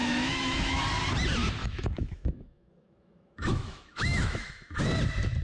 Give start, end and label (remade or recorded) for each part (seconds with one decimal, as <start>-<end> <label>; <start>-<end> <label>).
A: 0.0-0.8 remade; 0.8-1.6 recorded; 1.6-4.8 remade; 4.8-5.4 recorded